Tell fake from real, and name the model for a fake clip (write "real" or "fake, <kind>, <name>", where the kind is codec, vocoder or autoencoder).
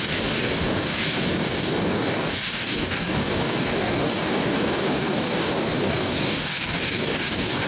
fake, codec, DAC